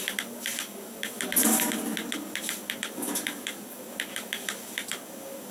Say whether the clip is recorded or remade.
remade